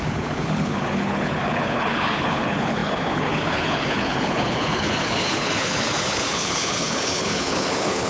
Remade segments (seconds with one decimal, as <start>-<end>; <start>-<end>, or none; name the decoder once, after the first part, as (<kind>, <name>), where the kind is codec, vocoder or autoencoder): 0.0-8.1 (codec, HILCodec)